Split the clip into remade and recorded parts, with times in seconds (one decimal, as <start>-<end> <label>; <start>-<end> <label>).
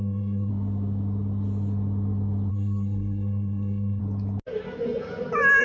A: 0.0-0.5 remade; 0.5-2.5 recorded; 2.5-4.0 remade; 4.0-5.6 recorded